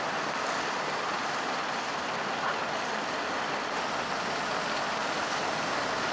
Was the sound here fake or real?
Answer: real